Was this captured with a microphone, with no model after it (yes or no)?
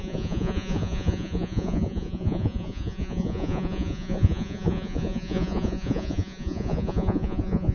no